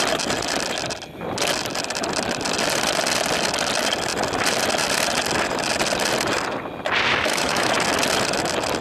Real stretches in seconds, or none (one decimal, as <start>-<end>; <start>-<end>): 0.0-7.1; 7.7-8.8